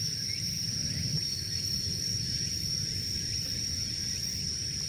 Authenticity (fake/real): fake